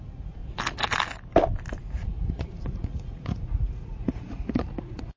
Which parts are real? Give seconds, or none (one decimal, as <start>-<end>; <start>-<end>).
0.4-1.8